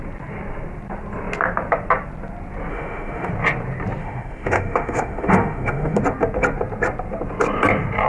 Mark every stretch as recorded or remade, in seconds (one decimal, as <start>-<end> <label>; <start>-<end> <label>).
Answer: 0.0-2.7 recorded; 2.7-3.3 remade; 3.3-4.0 recorded; 4.0-6.0 remade; 6.0-8.1 recorded